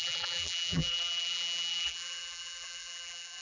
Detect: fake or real fake